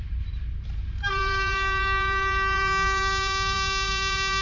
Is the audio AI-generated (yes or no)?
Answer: yes